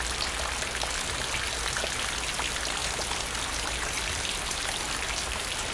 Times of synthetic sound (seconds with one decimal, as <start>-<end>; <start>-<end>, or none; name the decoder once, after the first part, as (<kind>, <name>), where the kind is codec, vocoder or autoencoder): none